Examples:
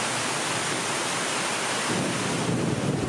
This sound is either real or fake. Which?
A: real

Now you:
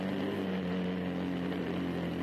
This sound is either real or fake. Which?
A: real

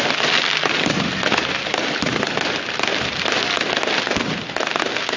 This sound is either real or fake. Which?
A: real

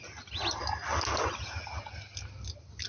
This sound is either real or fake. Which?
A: real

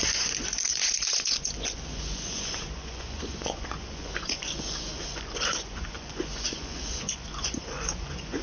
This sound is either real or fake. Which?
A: fake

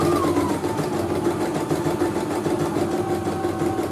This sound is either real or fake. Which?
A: real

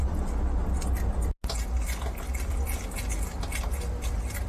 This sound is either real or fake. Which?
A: real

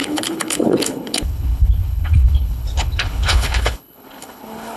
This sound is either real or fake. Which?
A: fake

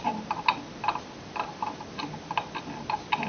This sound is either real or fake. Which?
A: real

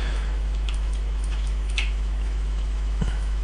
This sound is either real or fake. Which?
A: fake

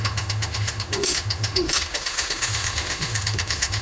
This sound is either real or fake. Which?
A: fake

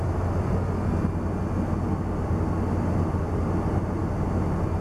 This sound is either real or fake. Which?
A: real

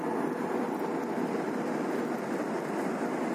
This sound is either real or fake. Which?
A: real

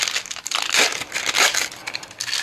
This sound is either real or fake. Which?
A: real